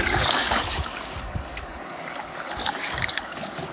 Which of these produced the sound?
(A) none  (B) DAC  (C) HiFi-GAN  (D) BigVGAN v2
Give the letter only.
B